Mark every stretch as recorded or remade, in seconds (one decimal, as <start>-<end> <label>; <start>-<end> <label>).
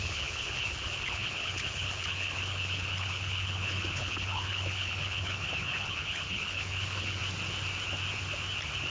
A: 0.0-7.2 remade; 7.2-8.9 recorded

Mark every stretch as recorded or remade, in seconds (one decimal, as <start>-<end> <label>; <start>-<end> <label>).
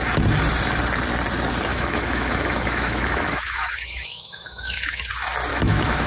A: 0.0-1.7 recorded; 1.7-5.1 remade; 5.1-5.5 recorded; 5.5-6.1 remade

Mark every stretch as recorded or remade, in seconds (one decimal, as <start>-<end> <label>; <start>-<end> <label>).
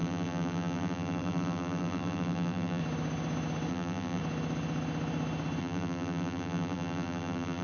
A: 0.0-2.8 remade; 2.8-3.7 recorded; 3.7-4.2 remade; 4.2-5.6 recorded; 5.6-7.6 remade